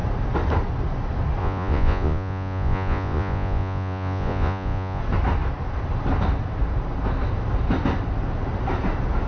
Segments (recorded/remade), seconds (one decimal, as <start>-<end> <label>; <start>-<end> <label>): 0.0-1.4 recorded; 1.4-5.0 remade; 5.0-9.3 recorded